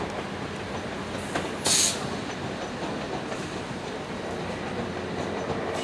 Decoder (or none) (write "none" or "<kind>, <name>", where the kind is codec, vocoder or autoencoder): none